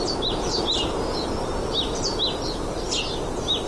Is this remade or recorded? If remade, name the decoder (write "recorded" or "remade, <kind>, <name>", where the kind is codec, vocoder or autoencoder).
recorded